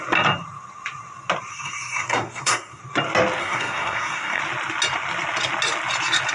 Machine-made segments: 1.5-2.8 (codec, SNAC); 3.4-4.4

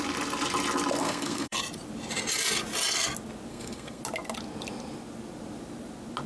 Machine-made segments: 1.0-1.6 (codec, SNAC); 3.5-4.0

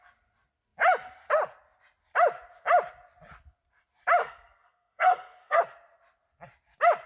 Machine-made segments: 4.2-5.6 (codec, SNAC)

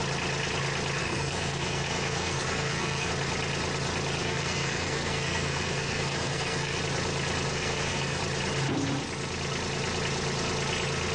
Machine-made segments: 1.0-3.1 (codec, SNAC); 4.2-6.8; 7.5-8.2

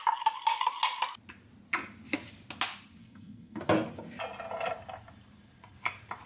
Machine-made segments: 3.0-3.6 (codec, SNAC)

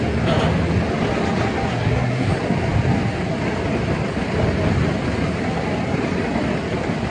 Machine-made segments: 1.7-2.3 (codec, SNAC)